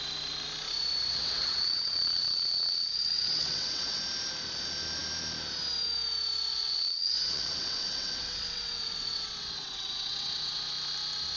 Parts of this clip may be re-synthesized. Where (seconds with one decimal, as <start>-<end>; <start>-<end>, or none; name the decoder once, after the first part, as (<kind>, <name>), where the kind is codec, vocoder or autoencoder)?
1.1-4.0 (vocoder, WaveNeXt); 6.5-10.6